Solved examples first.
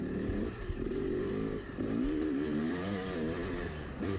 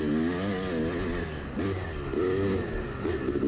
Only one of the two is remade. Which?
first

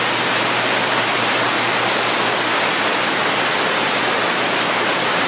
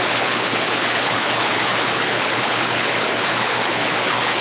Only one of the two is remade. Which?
second